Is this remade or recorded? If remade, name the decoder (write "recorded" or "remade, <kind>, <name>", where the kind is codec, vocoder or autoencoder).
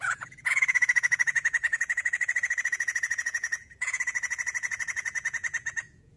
remade, vocoder, Vocos